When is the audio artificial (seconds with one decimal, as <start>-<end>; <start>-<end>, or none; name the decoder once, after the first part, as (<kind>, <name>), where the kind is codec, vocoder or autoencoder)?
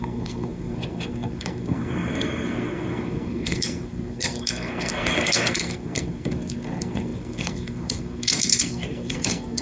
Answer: 0.0-9.6 (codec, SNAC)